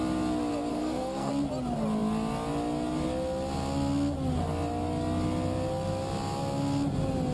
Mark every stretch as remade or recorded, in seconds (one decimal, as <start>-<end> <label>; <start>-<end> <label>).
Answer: 0.0-0.7 recorded; 0.7-1.3 remade; 1.3-7.3 recorded